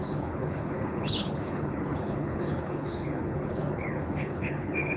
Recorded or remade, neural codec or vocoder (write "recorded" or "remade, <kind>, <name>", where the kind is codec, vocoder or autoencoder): remade, codec, HILCodec